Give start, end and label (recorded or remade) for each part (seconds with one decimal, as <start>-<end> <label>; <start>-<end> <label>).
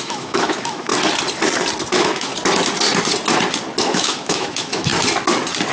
0.0-0.9 remade; 0.9-1.9 recorded; 1.9-2.3 remade; 2.3-3.8 recorded; 3.8-4.9 remade; 4.9-5.7 recorded